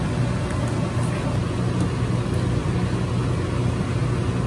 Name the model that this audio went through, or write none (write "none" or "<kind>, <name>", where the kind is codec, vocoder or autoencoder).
none